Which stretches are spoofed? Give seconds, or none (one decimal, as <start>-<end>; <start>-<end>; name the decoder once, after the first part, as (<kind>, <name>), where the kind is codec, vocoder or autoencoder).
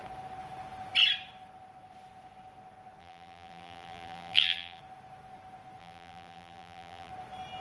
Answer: 3.0-4.8 (vocoder, BigVGAN v2); 5.8-7.1